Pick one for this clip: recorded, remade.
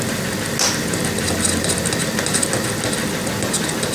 recorded